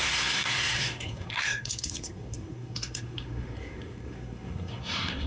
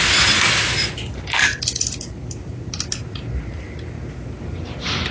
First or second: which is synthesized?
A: first